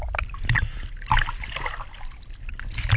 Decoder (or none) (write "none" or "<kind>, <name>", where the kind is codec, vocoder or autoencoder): none